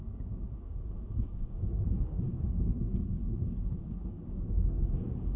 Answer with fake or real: fake